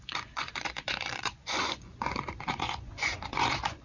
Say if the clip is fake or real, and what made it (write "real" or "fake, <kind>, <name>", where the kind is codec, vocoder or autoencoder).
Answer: fake, vocoder, Vocos